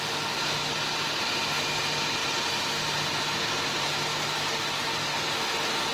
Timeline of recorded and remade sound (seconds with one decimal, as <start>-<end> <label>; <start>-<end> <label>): 0.0-5.9 recorded